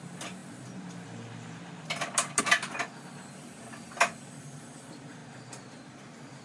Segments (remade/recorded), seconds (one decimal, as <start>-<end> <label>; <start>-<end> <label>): 0.0-6.4 recorded